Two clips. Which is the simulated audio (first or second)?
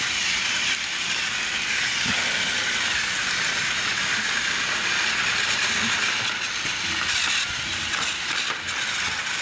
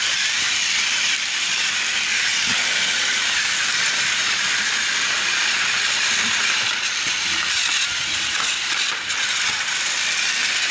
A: second